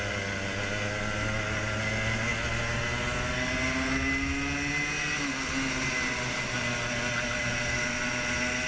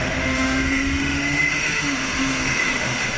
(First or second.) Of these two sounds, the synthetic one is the second